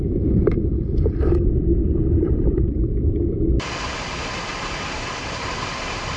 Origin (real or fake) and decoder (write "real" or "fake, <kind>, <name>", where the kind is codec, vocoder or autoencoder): fake, vocoder, BigVGAN v2